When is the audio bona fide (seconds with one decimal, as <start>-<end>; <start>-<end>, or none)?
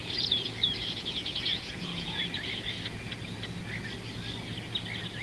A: 3.1-5.2